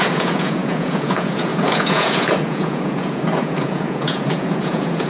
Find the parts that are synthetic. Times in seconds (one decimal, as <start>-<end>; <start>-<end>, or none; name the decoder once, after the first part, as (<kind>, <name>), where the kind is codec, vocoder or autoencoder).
0.0-5.1 (vocoder, Vocos)